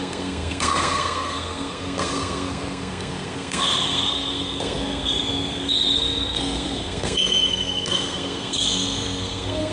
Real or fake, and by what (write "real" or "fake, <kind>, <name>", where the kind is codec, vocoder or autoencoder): fake, codec, SNAC